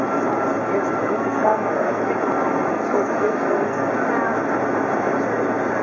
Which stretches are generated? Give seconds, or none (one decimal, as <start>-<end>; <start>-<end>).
1.0-2.1; 2.7-3.9